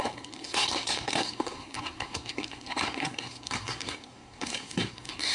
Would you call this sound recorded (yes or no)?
no